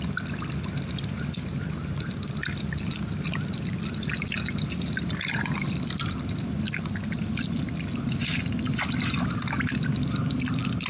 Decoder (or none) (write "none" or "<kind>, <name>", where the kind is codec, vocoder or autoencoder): none